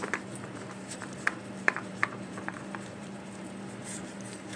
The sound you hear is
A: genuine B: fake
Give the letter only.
B